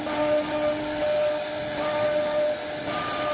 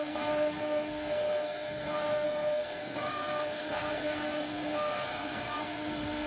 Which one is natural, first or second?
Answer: first